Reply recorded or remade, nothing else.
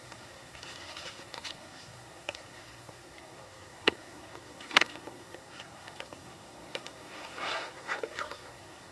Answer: remade